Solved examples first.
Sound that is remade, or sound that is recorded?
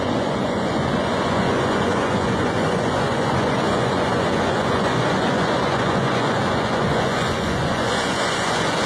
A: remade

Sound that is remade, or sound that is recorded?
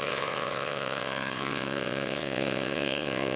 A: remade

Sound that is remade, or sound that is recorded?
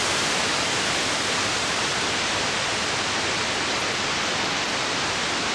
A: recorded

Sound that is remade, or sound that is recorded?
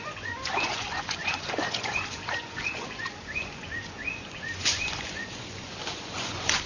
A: remade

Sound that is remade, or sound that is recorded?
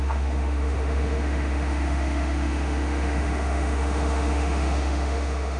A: remade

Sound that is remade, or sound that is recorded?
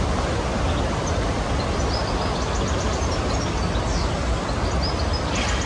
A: recorded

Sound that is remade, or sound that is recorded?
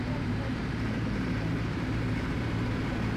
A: remade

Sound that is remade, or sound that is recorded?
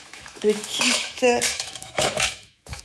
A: remade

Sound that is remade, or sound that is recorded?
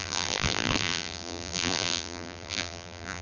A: remade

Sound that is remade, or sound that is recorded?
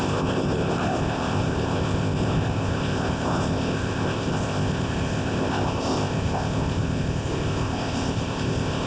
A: remade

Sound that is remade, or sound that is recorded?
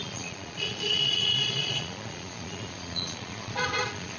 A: remade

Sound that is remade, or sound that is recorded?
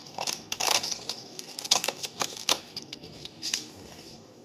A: remade